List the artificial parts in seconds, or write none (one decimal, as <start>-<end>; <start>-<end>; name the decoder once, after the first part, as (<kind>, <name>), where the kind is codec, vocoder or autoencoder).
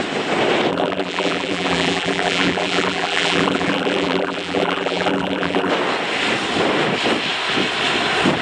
0.7-5.7 (vocoder, BigVGAN v2)